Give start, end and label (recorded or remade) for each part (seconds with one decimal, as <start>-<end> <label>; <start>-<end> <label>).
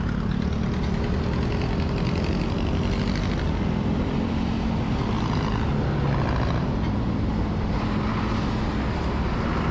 0.0-6.6 recorded; 6.6-8.1 remade; 8.1-9.7 recorded